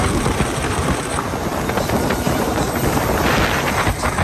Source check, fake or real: real